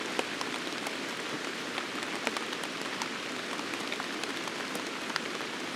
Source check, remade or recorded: recorded